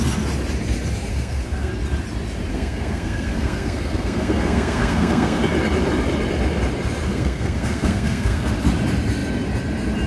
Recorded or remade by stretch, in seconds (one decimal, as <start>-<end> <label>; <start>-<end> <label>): 0.0-1.1 recorded; 1.1-1.7 remade; 1.7-2.5 recorded; 2.5-5.4 remade; 5.4-7.1 recorded; 7.1-8.5 remade; 8.5-10.1 recorded